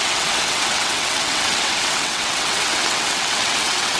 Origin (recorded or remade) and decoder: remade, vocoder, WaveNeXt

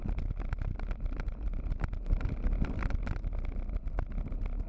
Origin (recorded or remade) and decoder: recorded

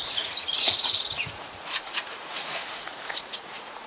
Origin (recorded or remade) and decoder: remade, vocoder, Vocos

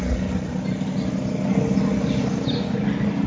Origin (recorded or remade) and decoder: recorded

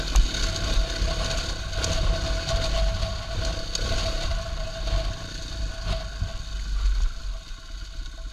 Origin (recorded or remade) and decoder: recorded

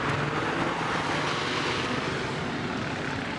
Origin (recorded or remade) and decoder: recorded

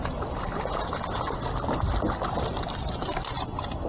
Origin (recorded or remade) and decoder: recorded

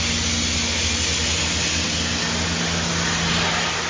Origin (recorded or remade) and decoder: recorded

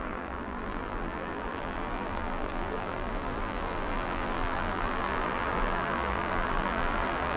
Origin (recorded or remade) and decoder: remade, vocoder, BigVGAN v2